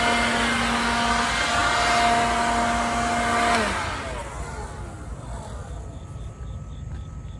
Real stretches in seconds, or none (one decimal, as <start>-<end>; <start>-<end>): 0.0-7.4